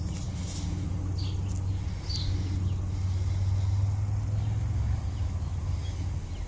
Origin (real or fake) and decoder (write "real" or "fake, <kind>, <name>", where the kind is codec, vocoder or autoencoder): real